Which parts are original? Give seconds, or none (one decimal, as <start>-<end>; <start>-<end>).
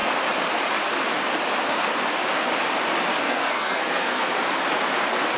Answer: 0.0-3.2; 4.3-5.4